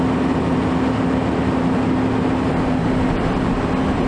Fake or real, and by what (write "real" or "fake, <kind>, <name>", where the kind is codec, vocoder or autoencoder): real